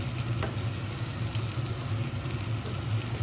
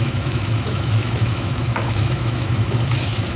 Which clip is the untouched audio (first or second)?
first